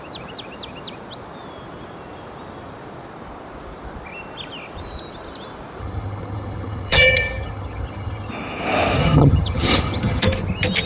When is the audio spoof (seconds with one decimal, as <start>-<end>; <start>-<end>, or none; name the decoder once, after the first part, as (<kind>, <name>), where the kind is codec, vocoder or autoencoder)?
5.8-8.3 (vocoder, HiFi-GAN); 9.0-10.2